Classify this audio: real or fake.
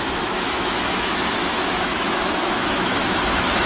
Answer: fake